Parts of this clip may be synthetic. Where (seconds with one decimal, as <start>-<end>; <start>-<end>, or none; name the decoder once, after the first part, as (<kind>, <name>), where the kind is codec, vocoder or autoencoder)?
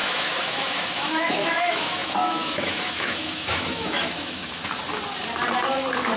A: 0.0-4.6 (autoencoder, DAC-VAE)